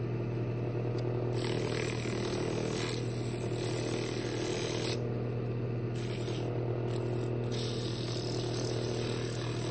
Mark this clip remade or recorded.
recorded